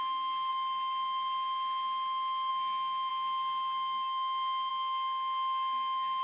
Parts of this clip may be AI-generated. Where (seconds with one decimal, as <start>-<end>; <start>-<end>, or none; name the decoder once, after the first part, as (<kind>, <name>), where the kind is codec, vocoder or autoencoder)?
0.0-0.5 (codec, SNAC); 2.5-6.2